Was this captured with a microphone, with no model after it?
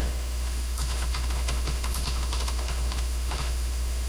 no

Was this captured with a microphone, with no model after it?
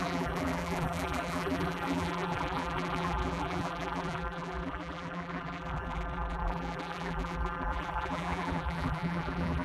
no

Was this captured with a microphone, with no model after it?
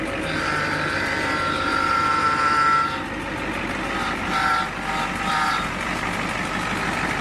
yes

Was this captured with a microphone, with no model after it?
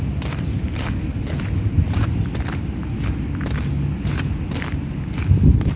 yes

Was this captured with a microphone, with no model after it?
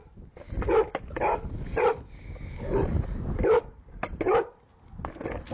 yes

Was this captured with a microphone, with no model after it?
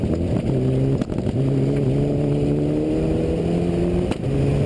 yes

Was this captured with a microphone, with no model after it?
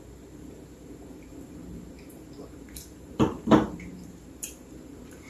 no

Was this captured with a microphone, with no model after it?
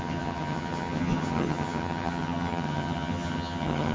no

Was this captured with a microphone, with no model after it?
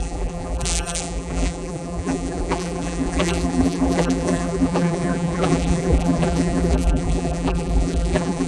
no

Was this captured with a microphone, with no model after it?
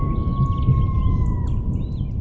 yes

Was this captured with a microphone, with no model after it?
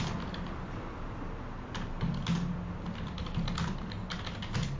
yes